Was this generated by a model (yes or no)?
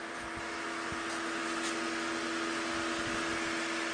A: no